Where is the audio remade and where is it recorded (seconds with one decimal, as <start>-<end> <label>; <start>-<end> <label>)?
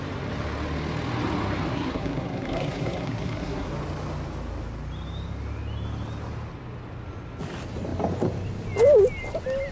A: 0.0-1.7 recorded; 1.7-3.7 remade; 3.7-9.7 recorded